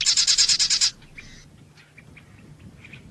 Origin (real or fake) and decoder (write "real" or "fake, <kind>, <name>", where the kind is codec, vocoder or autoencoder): real